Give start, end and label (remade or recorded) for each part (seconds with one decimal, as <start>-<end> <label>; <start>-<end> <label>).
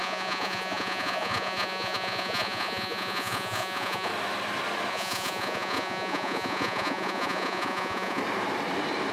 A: 0.0-4.1 remade; 4.1-4.9 recorded; 4.9-8.2 remade; 8.2-9.1 recorded